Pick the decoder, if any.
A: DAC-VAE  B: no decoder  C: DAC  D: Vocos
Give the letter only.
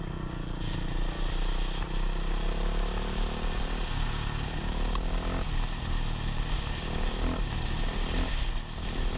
B